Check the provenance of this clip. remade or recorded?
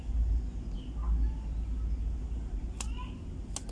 recorded